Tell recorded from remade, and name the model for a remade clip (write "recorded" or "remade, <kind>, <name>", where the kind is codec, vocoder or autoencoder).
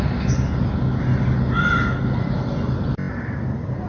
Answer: recorded